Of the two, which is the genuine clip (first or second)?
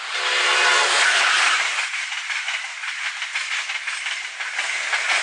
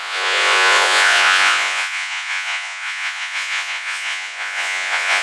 first